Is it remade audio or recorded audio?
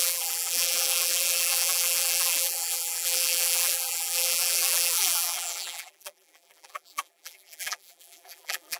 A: remade